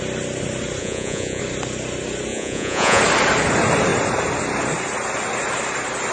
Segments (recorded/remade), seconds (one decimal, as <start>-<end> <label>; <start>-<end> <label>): 0.0-0.8 recorded; 0.8-1.4 remade; 1.4-2.3 recorded; 2.3-3.0 remade; 3.0-6.1 recorded